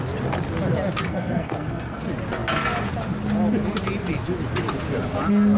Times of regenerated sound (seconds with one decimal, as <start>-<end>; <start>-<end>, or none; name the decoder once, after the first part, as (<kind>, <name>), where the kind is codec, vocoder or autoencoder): 1.1-2.0 (codec, SNAC)